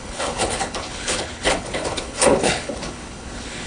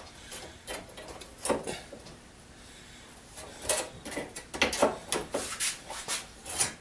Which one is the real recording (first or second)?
second